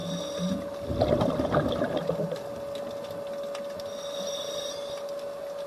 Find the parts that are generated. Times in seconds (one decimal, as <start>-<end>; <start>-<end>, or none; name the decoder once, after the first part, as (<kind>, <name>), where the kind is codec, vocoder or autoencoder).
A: none